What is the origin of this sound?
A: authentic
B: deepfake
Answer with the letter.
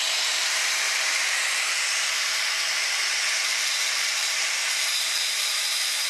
B